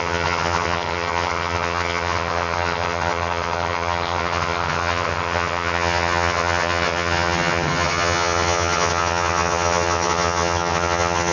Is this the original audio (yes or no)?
no